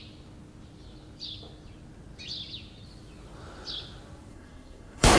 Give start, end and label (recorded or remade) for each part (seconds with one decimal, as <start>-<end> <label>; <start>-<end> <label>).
0.0-4.3 recorded; 4.3-5.2 remade

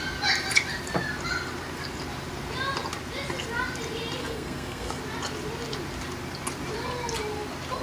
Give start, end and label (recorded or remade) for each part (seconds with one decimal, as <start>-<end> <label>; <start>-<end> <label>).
0.0-4.2 recorded; 4.2-5.0 remade; 5.0-7.8 recorded

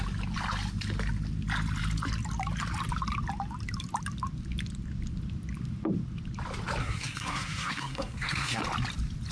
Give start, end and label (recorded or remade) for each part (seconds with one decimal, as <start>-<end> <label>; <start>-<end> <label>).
0.0-6.8 recorded; 6.8-8.6 remade; 8.6-9.3 recorded